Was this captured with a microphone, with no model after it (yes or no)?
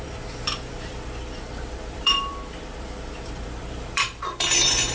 no